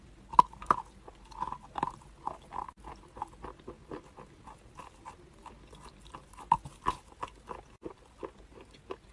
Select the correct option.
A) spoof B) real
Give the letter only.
B